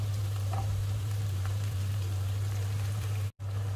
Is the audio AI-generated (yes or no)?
yes